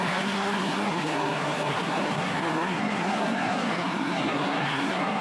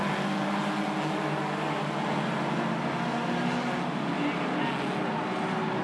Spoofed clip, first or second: first